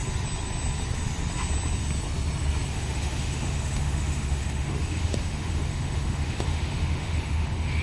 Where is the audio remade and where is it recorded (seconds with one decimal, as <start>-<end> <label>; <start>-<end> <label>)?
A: 0.0-2.7 recorded; 2.7-7.8 remade